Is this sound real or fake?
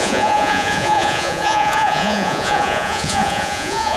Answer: fake